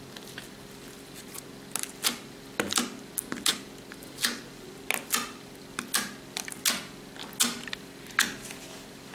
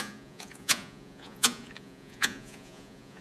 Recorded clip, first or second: first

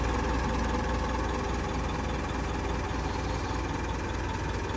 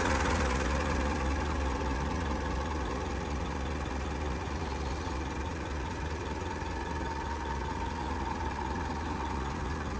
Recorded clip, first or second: first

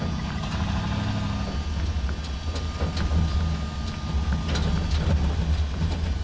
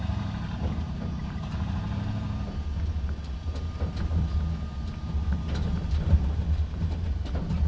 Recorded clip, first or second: first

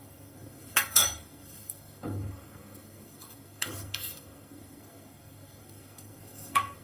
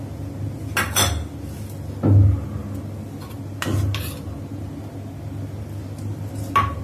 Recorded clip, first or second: second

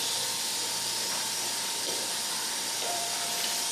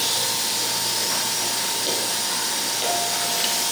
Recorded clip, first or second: second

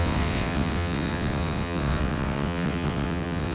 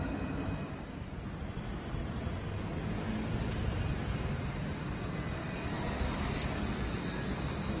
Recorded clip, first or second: second